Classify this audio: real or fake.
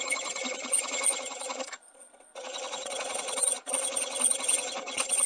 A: fake